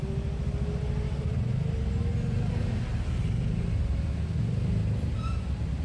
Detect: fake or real real